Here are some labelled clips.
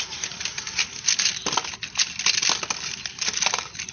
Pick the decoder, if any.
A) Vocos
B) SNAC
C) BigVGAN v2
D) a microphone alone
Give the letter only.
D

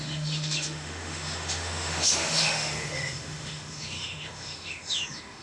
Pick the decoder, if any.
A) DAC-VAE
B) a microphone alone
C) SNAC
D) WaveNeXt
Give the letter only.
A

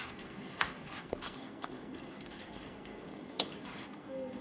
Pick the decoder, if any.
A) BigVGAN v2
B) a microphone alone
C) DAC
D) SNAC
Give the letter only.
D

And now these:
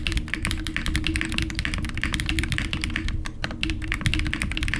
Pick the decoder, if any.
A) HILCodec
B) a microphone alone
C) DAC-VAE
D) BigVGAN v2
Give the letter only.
D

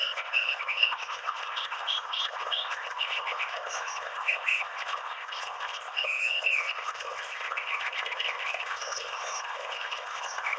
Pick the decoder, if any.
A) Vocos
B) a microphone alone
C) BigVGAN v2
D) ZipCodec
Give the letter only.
D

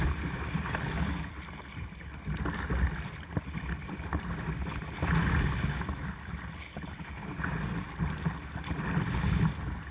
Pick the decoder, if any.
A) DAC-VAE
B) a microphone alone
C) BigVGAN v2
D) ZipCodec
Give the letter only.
B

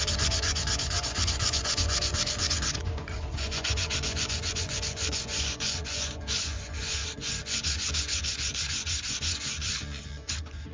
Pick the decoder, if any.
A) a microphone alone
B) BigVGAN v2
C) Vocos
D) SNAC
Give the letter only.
C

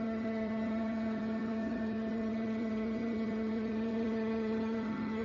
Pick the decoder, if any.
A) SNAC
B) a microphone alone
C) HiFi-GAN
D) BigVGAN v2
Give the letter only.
C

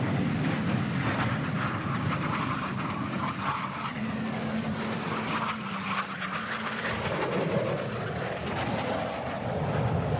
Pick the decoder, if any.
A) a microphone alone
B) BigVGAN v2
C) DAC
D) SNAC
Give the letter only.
A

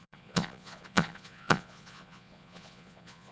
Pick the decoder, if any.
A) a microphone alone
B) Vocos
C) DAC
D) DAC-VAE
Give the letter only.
B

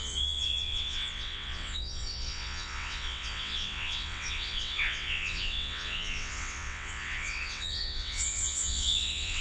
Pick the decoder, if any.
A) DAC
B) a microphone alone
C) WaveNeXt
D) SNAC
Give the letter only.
C